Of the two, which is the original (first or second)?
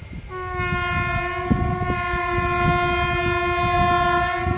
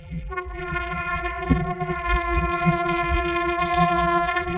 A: first